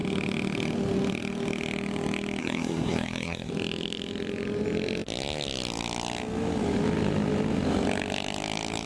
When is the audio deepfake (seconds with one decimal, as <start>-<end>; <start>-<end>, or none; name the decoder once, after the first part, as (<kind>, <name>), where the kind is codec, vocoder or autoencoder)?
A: 2.4-3.5 (codec, SNAC)